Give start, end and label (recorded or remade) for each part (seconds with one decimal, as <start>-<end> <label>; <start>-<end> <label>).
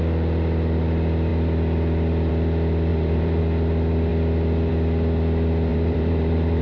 0.0-2.9 recorded; 2.9-3.4 remade; 3.4-5.7 recorded; 5.7-6.6 remade